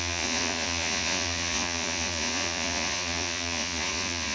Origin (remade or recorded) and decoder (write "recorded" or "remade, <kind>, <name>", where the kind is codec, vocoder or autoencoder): remade, vocoder, Vocos